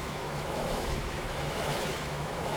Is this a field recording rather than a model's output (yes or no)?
no